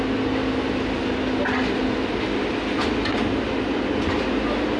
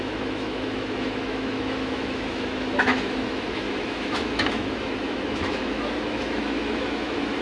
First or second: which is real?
first